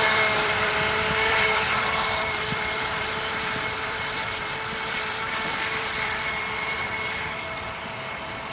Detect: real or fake fake